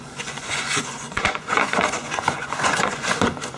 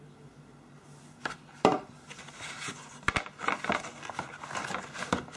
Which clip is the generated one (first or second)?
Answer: first